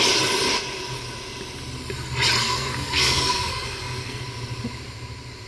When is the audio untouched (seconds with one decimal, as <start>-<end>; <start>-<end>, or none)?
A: 0.0-2.4; 4.2-5.5